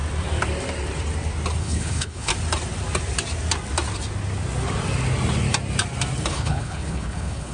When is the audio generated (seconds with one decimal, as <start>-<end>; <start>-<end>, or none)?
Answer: 1.6-2.3; 6.3-7.5

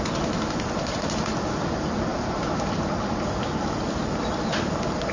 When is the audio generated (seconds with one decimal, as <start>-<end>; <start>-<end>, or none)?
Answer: none